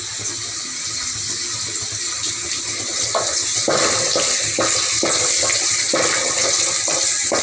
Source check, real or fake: real